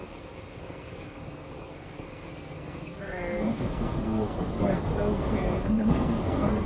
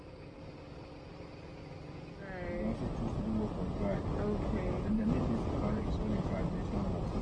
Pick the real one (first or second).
second